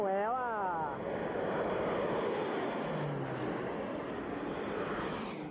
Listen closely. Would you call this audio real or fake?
real